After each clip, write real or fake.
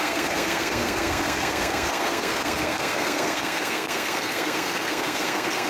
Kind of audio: fake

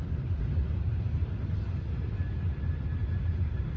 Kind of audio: fake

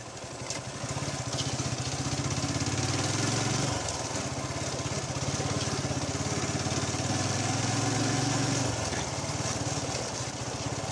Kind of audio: real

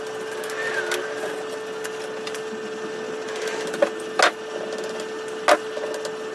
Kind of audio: real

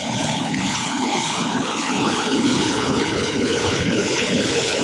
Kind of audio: fake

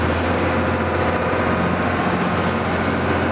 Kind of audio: real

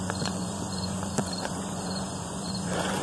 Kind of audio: fake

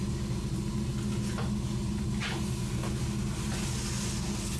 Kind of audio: real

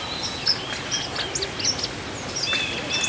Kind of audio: real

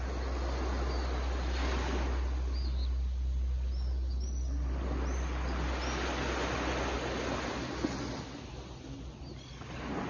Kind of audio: real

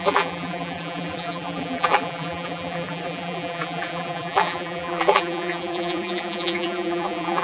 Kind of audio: fake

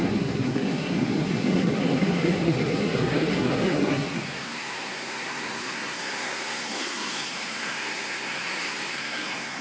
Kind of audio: fake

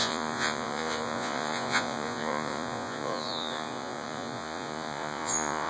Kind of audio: fake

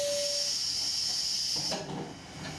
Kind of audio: real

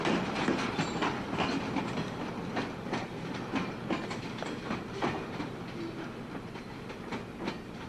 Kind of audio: real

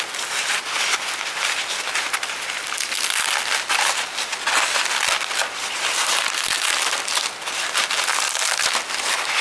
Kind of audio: real